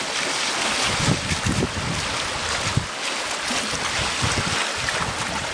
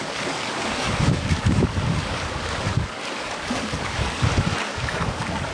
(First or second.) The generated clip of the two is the second